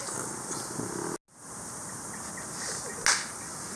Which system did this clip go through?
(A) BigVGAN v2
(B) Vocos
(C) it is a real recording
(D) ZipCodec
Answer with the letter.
C